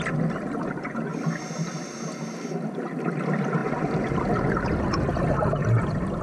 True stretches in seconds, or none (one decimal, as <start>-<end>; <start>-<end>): 0.0-6.2